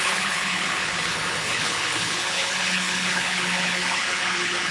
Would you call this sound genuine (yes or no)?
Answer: no